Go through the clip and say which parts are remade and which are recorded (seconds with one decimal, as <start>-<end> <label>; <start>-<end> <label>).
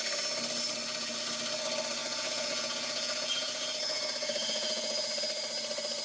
0.0-2.0 recorded; 2.0-5.2 remade; 5.2-6.0 recorded